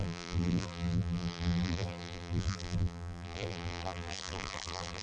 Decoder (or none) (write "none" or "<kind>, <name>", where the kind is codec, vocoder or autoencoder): vocoder, BigVGAN v2